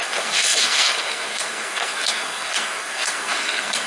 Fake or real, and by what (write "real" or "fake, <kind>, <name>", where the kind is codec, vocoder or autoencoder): fake, codec, SNAC